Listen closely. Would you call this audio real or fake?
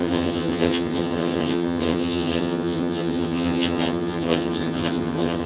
fake